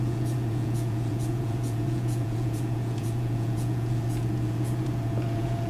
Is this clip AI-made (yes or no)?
yes